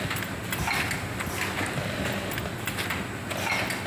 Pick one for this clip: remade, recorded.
recorded